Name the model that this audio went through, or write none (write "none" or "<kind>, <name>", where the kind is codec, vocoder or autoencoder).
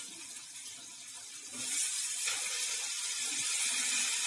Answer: none